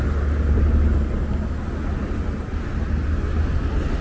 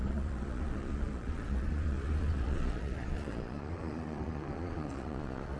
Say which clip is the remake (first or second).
second